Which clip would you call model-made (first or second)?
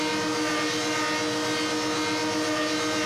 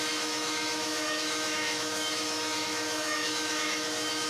second